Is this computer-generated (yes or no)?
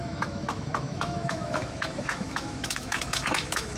yes